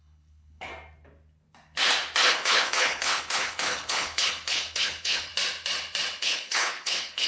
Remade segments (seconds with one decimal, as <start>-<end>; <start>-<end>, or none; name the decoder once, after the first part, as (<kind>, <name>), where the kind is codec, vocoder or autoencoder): 0.0-0.7 (codec, HILCodec); 2.3-5.3; 6.2-7.3